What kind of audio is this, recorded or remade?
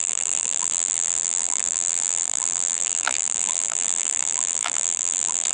remade